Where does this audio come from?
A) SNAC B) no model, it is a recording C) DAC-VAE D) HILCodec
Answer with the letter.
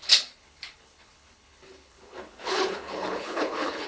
D